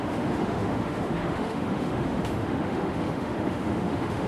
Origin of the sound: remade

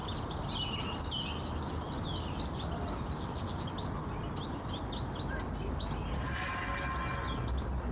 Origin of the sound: recorded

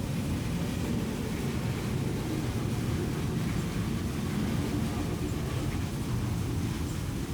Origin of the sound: recorded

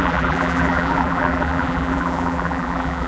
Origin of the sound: remade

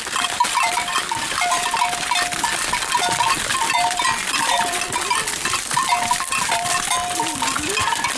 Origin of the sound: remade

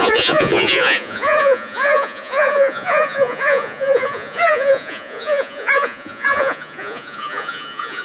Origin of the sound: remade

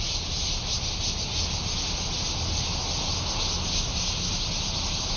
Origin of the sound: recorded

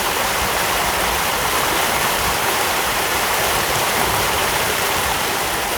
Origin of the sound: remade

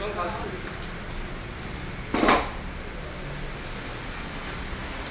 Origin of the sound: recorded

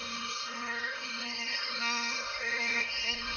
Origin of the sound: remade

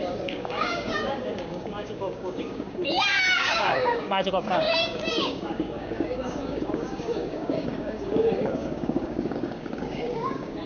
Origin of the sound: remade